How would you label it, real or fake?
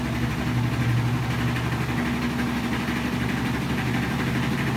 real